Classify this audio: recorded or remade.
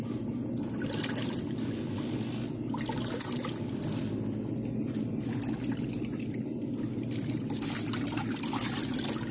recorded